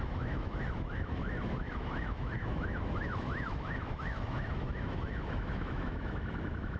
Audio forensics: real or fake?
fake